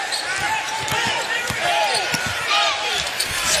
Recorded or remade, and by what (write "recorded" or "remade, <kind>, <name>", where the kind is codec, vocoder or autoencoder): remade, vocoder, BigVGAN v2